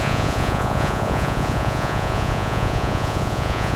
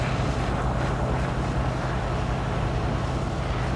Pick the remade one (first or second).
first